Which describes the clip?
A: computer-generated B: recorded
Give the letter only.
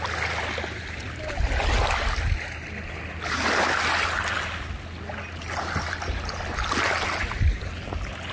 B